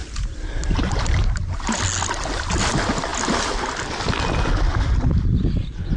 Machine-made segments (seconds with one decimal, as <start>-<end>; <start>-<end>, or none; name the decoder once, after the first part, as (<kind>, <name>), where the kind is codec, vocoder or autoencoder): 0.0-1.8 (vocoder, BigVGAN v2)